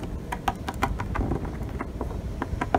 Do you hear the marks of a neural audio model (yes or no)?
no